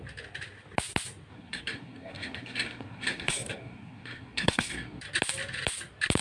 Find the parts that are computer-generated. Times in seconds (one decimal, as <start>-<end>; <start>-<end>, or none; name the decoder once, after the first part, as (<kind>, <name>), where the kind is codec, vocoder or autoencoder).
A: 1.3-5.0 (codec, SNAC)